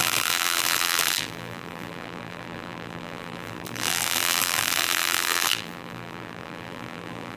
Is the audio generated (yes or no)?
yes